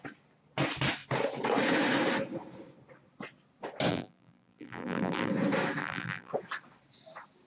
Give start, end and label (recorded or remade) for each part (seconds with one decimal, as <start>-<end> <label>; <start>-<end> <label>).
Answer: 0.0-3.9 recorded; 3.9-5.3 remade; 5.3-5.8 recorded; 5.8-6.3 remade; 6.3-7.5 recorded